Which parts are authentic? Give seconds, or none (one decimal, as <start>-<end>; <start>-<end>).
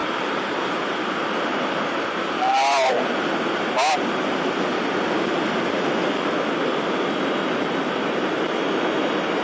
2.0-9.4